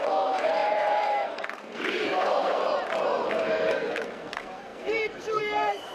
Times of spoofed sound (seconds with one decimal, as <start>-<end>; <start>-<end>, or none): 0.0-2.6; 3.3-5.9